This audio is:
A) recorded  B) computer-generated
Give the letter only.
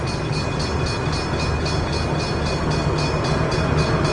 A